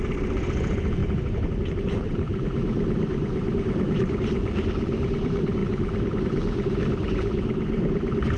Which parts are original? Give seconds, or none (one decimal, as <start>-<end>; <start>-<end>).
1.0-1.7; 2.3-4.0